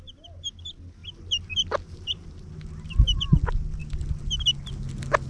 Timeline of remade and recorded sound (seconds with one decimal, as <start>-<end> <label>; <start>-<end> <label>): 0.0-5.3 recorded